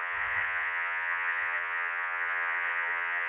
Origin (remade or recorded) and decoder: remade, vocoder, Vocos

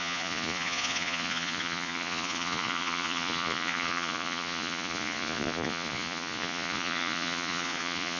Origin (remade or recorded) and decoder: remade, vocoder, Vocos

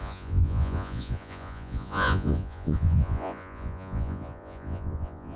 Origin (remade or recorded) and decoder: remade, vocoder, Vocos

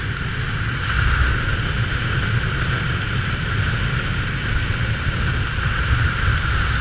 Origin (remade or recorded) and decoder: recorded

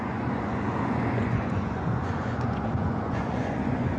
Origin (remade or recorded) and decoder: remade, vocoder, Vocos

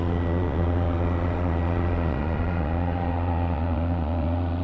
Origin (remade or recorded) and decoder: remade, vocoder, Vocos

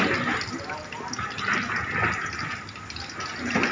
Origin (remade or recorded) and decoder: recorded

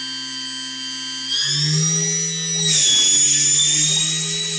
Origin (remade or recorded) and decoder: recorded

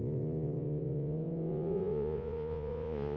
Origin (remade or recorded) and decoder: remade, vocoder, Vocos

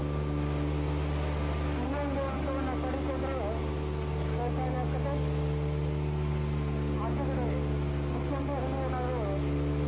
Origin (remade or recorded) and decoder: recorded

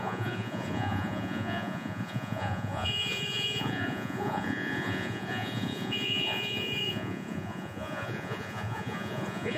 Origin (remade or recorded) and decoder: remade, vocoder, Vocos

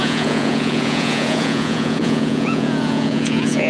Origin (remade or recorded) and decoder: remade, vocoder, Vocos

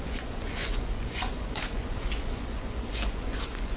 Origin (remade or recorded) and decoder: remade, vocoder, Vocos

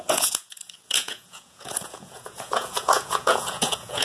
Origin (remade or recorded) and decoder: remade, vocoder, Vocos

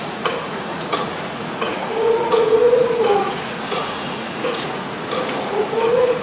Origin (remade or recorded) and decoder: remade, vocoder, Vocos